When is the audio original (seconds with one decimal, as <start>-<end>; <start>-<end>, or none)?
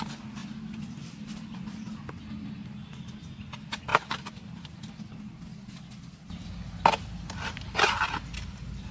0.0-8.9